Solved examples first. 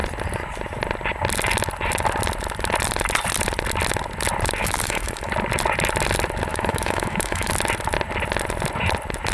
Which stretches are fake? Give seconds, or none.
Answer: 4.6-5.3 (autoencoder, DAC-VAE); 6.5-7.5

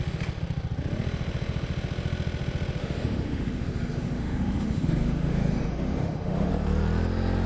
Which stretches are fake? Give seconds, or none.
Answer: 2.8-6.5 (autoencoder, DAC-VAE)

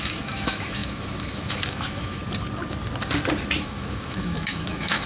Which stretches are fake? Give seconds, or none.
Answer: 0.0-2.2 (autoencoder, DAC-VAE); 3.6-5.1

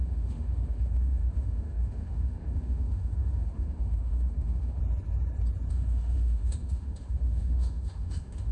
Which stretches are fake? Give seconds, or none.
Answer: 0.0-4.8 (autoencoder, DAC-VAE); 5.7-8.5

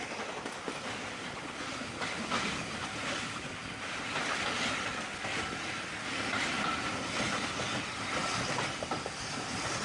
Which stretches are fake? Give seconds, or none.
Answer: none